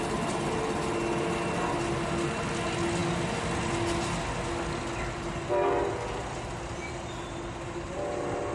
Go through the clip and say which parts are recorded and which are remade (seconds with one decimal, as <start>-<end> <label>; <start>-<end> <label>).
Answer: 0.0-8.5 recorded